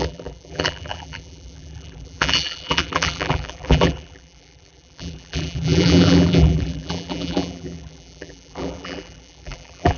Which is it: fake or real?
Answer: fake